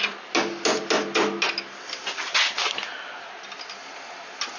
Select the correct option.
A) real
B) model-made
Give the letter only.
A